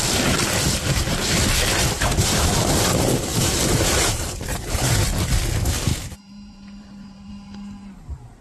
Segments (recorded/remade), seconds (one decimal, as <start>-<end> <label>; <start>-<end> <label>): 0.0-3.3 recorded; 3.3-5.0 remade; 5.0-5.9 recorded; 5.9-7.3 remade; 7.3-8.4 recorded